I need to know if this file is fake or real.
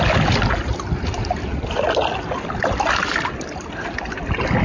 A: real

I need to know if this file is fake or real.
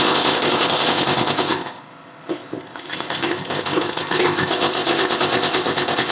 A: fake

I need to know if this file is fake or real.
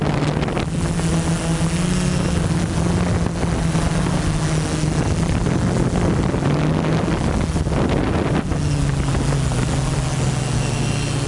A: real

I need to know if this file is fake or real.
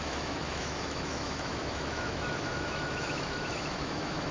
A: fake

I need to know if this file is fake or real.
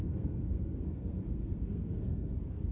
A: fake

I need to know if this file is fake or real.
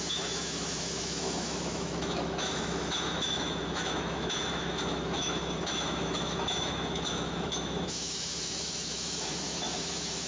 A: fake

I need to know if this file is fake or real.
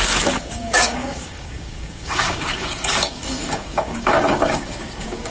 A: fake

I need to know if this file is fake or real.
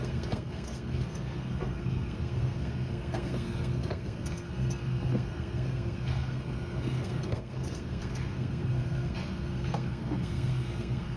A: fake